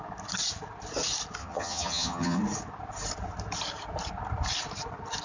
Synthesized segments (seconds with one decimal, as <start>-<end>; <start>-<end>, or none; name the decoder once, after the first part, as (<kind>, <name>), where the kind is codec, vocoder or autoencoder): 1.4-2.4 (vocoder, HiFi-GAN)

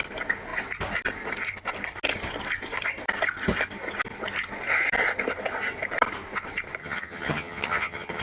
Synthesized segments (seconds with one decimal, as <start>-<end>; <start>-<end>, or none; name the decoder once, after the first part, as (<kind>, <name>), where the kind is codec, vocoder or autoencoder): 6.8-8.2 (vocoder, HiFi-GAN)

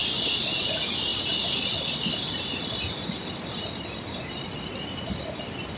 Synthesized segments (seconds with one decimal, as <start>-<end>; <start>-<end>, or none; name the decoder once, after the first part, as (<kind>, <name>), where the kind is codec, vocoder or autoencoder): none

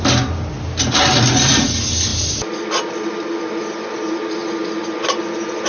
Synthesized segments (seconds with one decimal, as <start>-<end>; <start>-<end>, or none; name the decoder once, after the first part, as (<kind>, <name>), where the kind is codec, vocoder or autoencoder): none